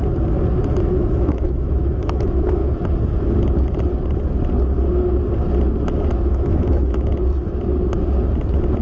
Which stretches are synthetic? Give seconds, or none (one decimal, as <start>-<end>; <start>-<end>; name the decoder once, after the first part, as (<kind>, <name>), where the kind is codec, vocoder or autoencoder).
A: 0.8-2.6 (autoencoder, DAC-VAE); 6.2-7.1